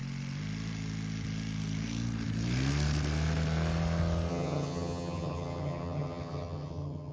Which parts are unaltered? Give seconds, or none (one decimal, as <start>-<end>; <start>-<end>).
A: 0.0-4.3